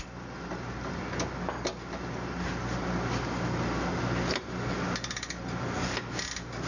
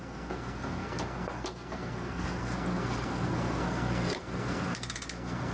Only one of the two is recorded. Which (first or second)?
first